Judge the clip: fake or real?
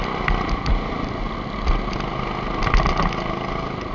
real